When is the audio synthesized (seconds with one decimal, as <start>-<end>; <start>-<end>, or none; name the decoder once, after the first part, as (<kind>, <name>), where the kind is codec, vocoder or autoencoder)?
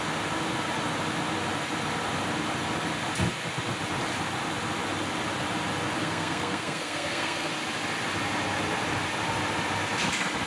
6.0-7.5 (codec, SNAC)